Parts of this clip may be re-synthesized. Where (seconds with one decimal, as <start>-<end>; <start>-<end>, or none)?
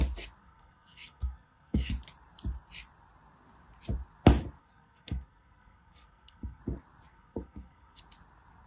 0.4-1.9; 4.6-6.6; 7.1-8.0